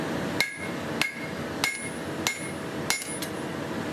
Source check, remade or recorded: recorded